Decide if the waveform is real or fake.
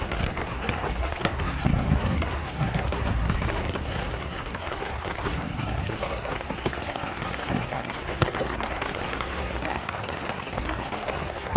fake